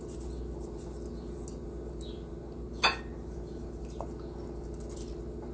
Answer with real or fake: real